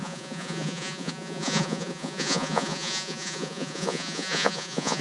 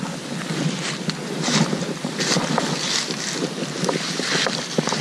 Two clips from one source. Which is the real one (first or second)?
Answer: second